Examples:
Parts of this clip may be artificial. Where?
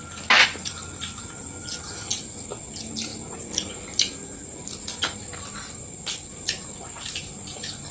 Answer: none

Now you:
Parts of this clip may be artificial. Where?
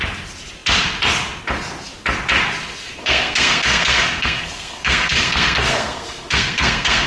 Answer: 3.0-7.1 (codec, SNAC)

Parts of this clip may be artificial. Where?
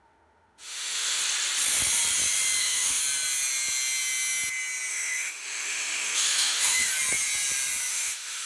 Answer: 0.0-1.2 (autoencoder, DAC-VAE); 2.6-3.0; 4.9-6.9; 7.9-8.5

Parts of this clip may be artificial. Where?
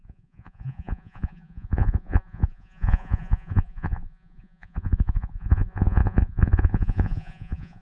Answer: 0.0-7.8 (vocoder, Vocos)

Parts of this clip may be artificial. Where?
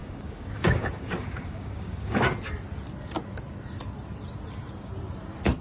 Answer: 0.0-2.3 (codec, DAC)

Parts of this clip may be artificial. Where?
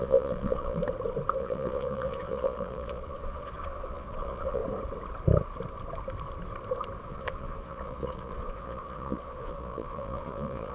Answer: 0.0-0.8 (vocoder, Vocos); 1.4-4.6; 7.0-10.7